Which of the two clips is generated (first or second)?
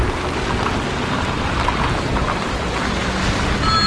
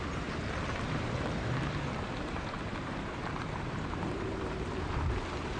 second